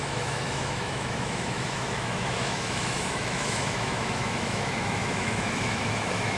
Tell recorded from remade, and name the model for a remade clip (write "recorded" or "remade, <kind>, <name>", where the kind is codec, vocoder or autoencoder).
remade, autoencoder, DAC-VAE